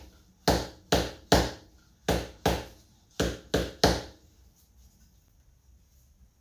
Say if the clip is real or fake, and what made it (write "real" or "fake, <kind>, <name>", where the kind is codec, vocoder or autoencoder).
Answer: real